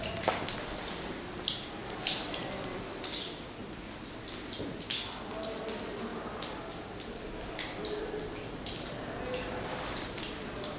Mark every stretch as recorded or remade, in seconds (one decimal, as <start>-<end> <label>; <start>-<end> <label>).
0.0-10.8 recorded